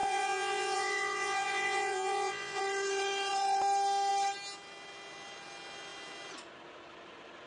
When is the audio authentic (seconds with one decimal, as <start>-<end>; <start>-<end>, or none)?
2.6-7.5